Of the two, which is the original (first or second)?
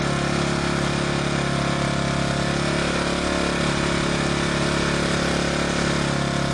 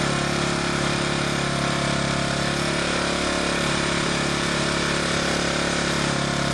first